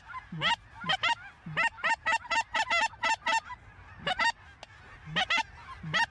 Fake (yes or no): no